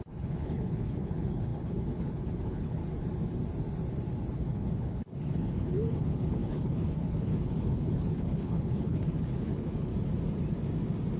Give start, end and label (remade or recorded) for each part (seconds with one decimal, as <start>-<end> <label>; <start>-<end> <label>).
0.0-2.8 remade; 2.8-4.3 recorded; 4.3-9.9 remade; 9.9-11.2 recorded